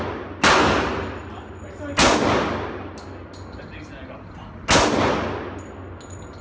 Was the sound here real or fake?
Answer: real